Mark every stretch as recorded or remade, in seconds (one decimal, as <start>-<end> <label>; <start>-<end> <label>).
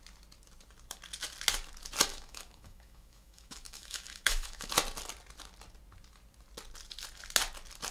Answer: 0.0-2.1 recorded; 2.1-4.7 remade; 4.7-7.9 recorded